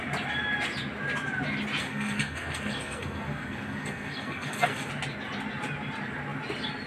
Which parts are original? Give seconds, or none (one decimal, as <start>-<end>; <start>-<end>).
0.0-1.8; 4.9-6.9